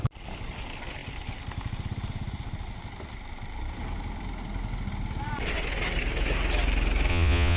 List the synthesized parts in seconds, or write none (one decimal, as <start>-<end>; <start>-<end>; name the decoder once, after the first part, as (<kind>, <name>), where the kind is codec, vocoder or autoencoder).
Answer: 7.1-7.6 (vocoder, Vocos)